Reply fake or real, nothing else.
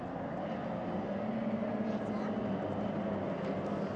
real